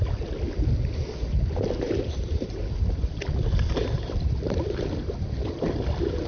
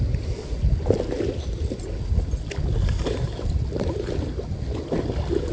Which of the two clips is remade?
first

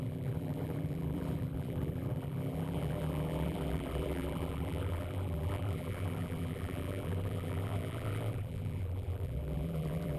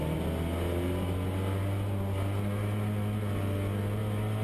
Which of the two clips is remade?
first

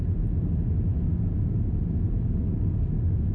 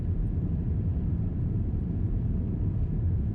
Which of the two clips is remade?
second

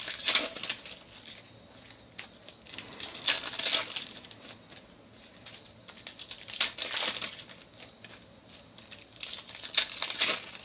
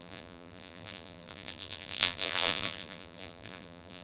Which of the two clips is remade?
second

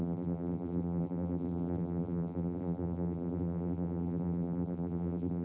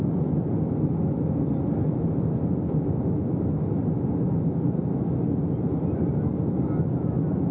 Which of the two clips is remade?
first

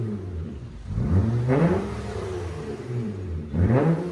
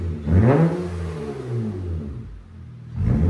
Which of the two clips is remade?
first